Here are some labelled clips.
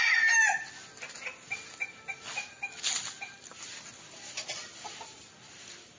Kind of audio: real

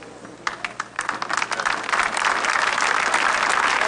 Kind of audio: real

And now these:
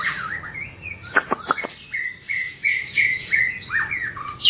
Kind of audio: fake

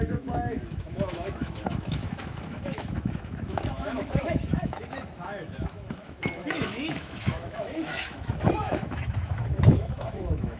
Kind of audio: fake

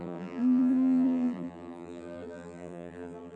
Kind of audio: fake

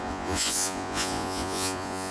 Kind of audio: fake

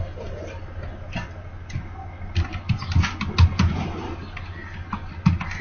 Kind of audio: real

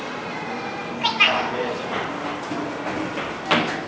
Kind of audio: real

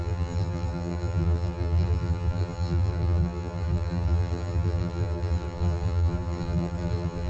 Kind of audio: fake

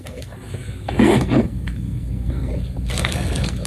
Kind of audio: fake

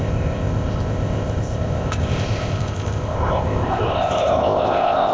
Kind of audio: fake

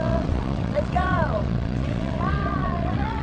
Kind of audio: fake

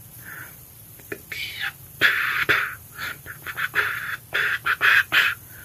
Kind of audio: fake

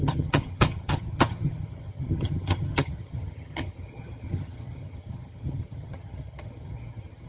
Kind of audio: fake